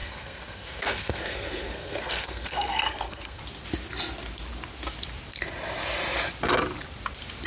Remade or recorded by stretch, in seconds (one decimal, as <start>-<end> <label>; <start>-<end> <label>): 0.0-3.4 remade; 3.4-7.5 recorded